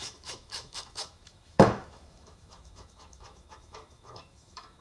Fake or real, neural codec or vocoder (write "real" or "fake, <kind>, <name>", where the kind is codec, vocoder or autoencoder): fake, autoencoder, DAC-VAE